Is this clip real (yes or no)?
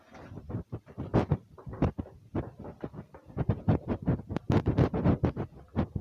yes